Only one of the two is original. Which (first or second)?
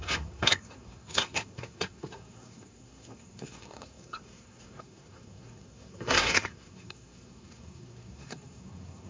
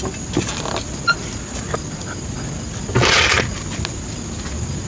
second